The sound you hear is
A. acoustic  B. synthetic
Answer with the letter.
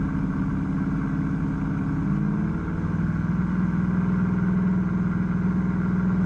A